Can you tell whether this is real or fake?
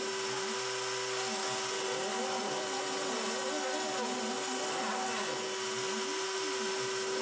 real